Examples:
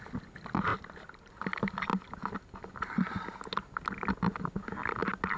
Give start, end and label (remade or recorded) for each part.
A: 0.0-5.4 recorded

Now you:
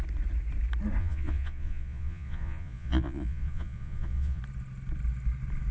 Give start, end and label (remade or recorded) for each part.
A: 0.0-1.0 recorded; 1.0-4.4 remade; 4.4-5.7 recorded